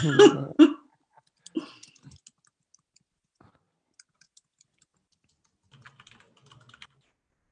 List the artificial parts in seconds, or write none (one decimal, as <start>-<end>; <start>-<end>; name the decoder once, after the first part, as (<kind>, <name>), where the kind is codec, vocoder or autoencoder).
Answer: none